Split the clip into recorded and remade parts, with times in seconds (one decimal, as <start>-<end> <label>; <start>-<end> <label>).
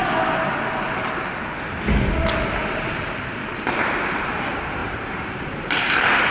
0.0-3.8 recorded; 3.8-6.3 remade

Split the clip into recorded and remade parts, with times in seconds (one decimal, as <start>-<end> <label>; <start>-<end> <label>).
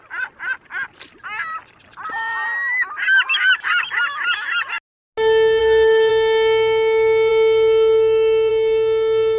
0.0-5.6 recorded; 5.6-6.1 remade; 6.1-9.4 recorded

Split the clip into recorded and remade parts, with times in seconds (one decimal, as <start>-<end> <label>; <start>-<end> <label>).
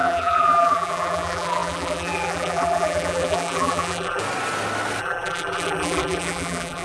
0.0-4.2 remade; 4.2-5.0 recorded; 5.0-6.8 remade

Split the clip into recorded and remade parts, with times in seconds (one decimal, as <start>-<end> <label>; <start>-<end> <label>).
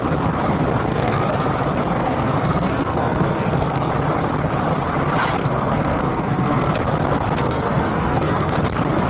0.0-0.9 recorded; 0.9-1.5 remade; 1.5-2.0 recorded; 2.0-3.9 remade; 3.9-5.4 recorded; 5.4-6.7 remade; 6.7-7.4 recorded; 7.4-8.5 remade; 8.5-9.1 recorded